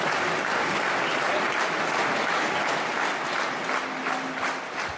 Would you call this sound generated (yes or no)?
no